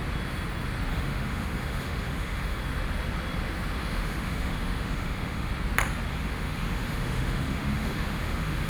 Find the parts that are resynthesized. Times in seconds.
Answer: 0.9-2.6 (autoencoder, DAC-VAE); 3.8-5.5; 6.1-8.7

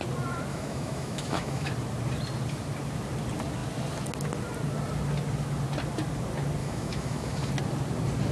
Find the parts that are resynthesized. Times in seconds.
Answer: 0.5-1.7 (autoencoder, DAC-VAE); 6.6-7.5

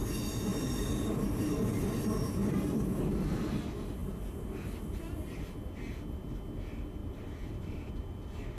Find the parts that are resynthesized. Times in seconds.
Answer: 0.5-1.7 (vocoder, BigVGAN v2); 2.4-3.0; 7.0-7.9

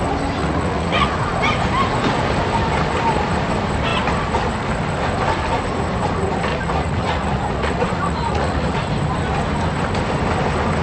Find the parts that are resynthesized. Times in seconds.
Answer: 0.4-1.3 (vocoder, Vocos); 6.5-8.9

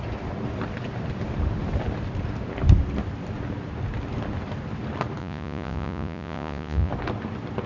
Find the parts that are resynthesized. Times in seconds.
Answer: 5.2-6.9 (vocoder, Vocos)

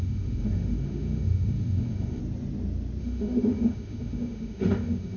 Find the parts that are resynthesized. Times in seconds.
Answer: 0.0-2.2 (autoencoder, DAC-VAE); 3.0-5.2